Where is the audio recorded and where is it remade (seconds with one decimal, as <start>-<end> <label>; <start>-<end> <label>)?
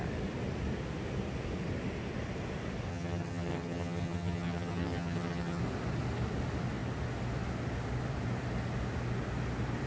0.0-2.9 recorded; 2.9-5.6 remade; 5.6-9.9 recorded